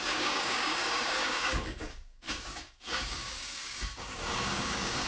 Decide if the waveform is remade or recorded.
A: remade